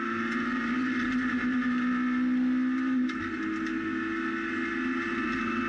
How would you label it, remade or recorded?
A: recorded